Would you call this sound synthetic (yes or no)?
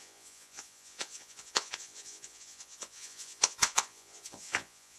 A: yes